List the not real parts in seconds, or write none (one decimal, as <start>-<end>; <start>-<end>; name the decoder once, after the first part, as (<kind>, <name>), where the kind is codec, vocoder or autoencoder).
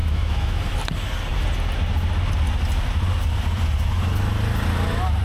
0.0-0.6 (autoencoder, DAC-VAE)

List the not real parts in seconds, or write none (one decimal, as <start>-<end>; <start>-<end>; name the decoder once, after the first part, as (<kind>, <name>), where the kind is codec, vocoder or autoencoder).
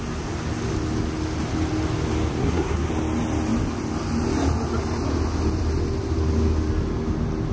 2.4-2.9 (codec, SNAC)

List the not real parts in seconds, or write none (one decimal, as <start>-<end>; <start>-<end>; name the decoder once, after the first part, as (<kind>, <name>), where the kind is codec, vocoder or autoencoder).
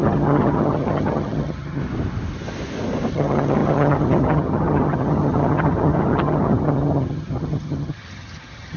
0.0-1.8 (vocoder, HiFi-GAN); 3.1-8.8